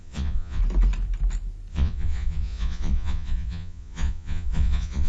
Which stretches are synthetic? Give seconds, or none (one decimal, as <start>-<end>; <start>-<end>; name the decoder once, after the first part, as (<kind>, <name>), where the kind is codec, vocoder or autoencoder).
0.0-0.6 (vocoder, Vocos); 1.7-5.1